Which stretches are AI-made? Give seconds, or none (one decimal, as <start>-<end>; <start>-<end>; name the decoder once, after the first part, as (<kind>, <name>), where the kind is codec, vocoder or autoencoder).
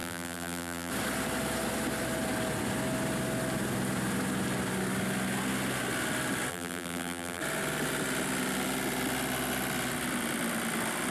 0.0-0.9 (vocoder, BigVGAN v2); 6.5-7.4